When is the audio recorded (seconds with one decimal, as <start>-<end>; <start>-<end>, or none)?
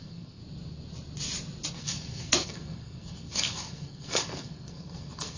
0.4-1.7